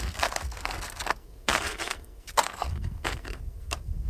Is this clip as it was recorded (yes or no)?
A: no